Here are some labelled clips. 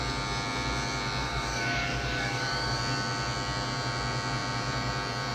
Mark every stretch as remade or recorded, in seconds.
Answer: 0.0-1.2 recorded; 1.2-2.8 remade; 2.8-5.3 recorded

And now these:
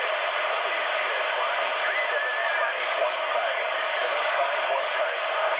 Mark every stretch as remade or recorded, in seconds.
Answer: 0.0-2.4 recorded; 2.4-5.0 remade; 5.0-5.6 recorded

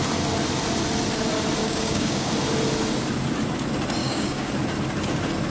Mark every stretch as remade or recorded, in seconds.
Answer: 0.0-1.6 recorded; 1.6-2.3 remade; 2.3-4.0 recorded; 4.0-4.5 remade; 4.5-5.5 recorded

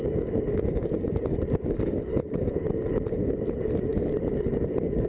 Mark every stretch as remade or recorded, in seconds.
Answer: 0.0-3.0 remade; 3.0-3.9 recorded; 3.9-5.1 remade

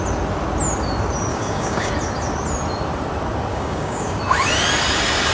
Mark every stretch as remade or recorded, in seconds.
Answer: 0.0-1.3 recorded; 1.3-1.9 remade; 1.9-3.5 recorded; 3.5-4.2 remade; 4.2-5.3 recorded

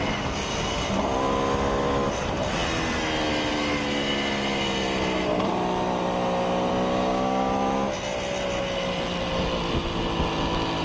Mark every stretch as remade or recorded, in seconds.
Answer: 0.0-6.9 recorded; 6.9-7.5 remade; 7.5-10.8 recorded

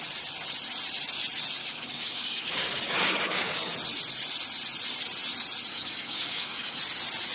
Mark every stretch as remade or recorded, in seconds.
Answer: 0.0-1.6 recorded; 1.6-3.7 remade; 3.7-5.7 recorded; 5.7-6.8 remade; 6.8-7.3 recorded